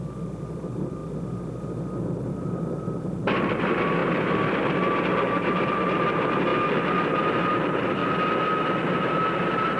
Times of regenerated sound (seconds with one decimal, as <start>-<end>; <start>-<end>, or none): 0.0-1.0; 2.3-6.5; 7.0-8.0; 8.9-9.8